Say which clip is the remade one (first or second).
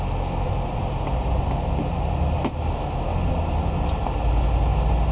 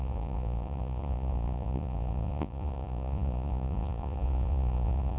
second